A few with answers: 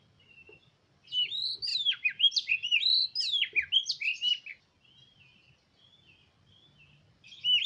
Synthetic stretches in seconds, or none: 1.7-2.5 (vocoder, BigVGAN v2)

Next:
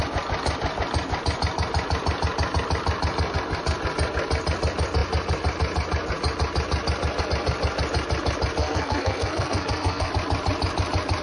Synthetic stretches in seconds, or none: 8.6-10.1 (codec, SNAC)

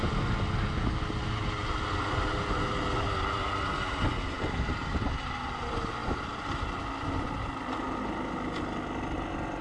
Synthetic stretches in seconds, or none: none

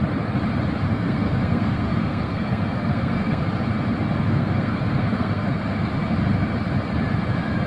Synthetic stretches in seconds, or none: 0.9-3.4 (codec, SNAC); 4.2-5.9

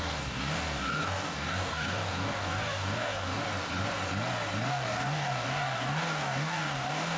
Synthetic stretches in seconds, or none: 0.0-3.4 (codec, DAC); 4.7-7.2

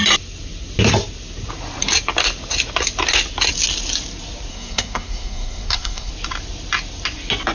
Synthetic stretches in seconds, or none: 4.5-6.1 (codec, SNAC)

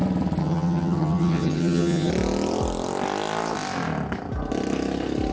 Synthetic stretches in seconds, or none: 0.4-2.1 (vocoder, HiFi-GAN)